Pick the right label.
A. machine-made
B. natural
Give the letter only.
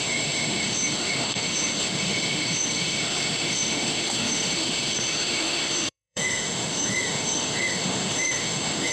A